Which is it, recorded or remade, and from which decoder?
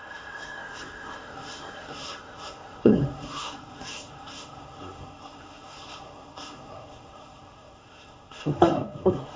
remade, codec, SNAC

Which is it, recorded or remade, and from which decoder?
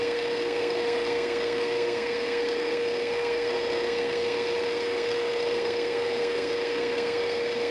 remade, codec, SNAC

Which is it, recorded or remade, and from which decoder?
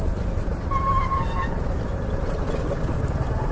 recorded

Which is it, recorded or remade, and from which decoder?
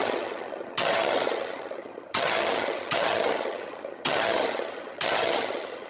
remade, vocoder, HiFi-GAN